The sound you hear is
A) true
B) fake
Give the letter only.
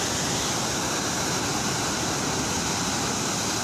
A